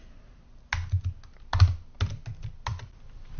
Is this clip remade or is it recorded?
recorded